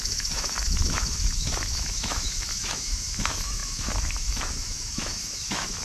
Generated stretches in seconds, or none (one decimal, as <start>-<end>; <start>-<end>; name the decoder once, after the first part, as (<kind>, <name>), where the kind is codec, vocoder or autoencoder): 0.0-5.8 (autoencoder, DAC-VAE)